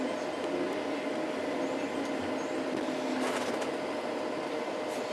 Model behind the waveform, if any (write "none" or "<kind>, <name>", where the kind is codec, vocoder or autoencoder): none